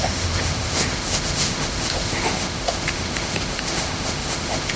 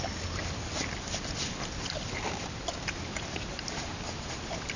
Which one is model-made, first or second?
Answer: first